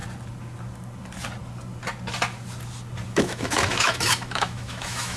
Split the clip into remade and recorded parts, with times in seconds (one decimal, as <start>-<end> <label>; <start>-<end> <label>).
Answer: 0.0-3.1 recorded; 3.1-5.2 remade